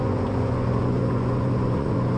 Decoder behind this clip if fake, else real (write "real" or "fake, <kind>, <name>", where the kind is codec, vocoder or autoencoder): fake, vocoder, Vocos